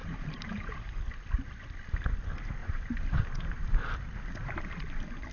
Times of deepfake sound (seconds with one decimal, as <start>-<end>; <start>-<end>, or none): 0.0-1.0; 2.6-4.8